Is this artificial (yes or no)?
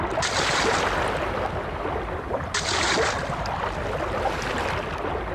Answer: no